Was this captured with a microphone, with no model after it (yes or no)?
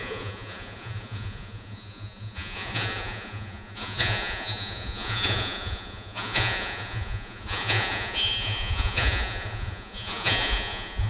no